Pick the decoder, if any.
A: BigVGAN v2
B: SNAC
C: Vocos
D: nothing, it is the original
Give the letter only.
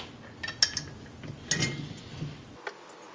D